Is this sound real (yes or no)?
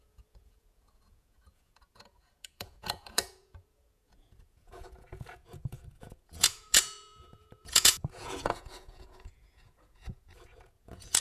no